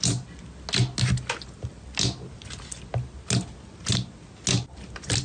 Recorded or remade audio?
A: recorded